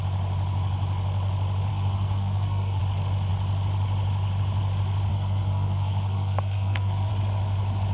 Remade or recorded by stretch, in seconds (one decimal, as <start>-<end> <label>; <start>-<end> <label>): 0.0-1.7 recorded; 1.7-2.8 remade; 2.8-5.1 recorded; 5.1-7.1 remade; 7.1-7.9 recorded